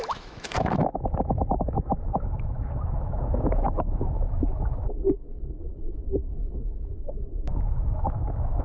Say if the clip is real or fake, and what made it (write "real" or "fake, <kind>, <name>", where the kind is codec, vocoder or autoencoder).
fake, autoencoder, DAC-VAE